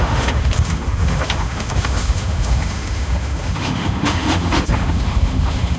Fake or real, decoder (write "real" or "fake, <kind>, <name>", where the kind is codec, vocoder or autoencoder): fake, autoencoder, DAC-VAE